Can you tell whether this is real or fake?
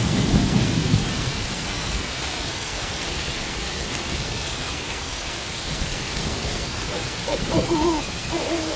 fake